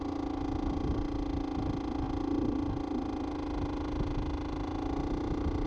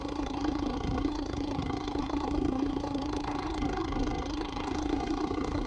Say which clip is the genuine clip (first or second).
first